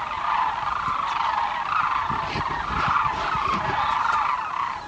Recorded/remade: recorded